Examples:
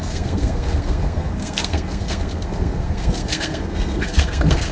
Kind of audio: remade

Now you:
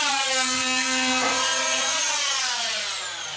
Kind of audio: remade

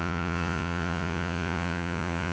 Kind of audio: remade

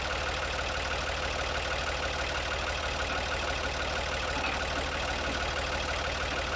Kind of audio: recorded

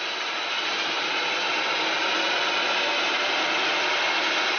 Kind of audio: recorded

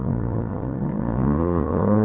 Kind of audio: remade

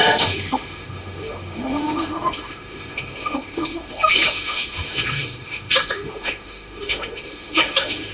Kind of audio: remade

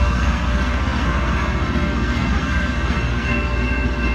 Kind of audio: remade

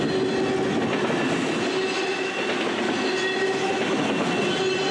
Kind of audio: recorded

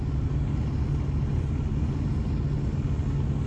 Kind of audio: recorded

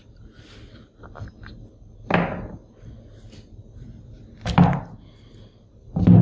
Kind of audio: recorded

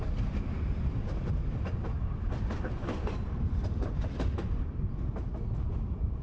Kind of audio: recorded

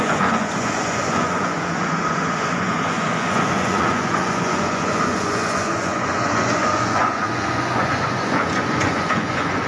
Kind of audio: remade